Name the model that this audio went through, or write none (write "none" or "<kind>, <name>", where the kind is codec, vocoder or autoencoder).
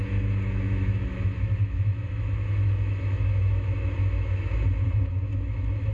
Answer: autoencoder, DAC-VAE